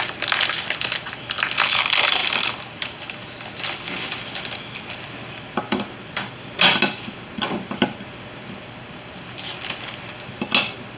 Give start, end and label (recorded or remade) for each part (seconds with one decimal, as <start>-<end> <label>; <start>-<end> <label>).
0.0-2.2 recorded; 2.2-3.6 remade; 3.6-11.0 recorded